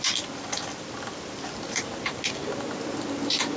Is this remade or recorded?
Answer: recorded